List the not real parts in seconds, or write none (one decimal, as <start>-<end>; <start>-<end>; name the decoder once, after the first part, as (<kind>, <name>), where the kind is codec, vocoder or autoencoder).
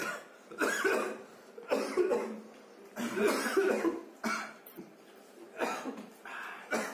none